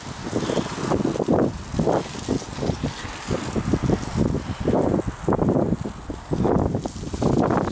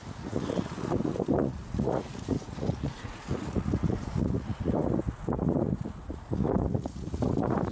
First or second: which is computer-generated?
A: second